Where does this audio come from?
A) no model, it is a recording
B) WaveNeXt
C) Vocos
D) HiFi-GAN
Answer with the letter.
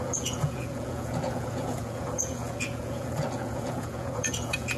C